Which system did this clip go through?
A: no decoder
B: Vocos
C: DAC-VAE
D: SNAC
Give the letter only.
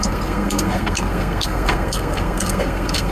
D